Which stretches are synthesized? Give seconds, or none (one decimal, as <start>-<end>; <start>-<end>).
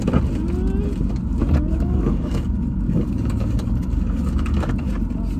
1.7-4.9